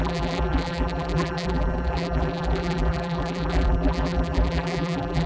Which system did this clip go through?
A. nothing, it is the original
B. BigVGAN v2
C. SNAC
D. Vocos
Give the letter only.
B